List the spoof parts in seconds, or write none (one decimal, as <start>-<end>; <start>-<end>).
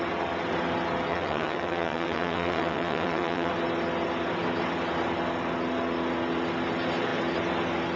1.1-3.5